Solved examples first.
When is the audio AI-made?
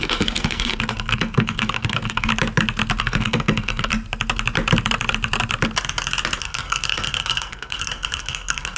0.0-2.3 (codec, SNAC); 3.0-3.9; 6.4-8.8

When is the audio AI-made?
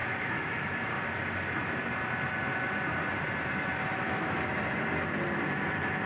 0.0-1.0 (autoencoder, DAC-VAE); 3.9-4.5